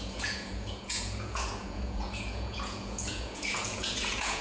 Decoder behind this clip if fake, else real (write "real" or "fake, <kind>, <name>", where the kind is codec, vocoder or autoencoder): fake, vocoder, Vocos